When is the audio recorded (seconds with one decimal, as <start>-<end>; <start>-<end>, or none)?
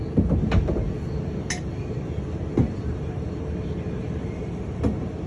0.0-4.0; 4.8-5.3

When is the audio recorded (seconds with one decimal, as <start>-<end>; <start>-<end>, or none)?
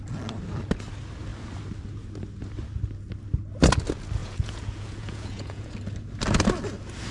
0.0-4.2; 5.7-7.1